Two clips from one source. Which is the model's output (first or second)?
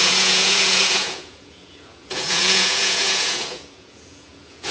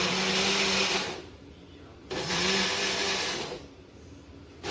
first